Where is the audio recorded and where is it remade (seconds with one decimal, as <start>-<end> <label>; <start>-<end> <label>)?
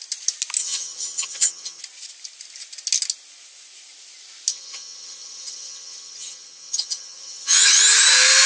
0.0-0.6 recorded; 0.6-1.8 remade; 1.8-4.5 recorded; 4.5-7.8 remade; 7.8-8.5 recorded